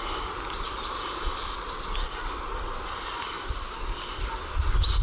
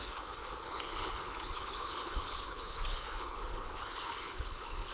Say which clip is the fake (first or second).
second